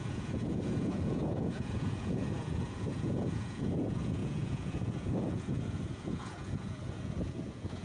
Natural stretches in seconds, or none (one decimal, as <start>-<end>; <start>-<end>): none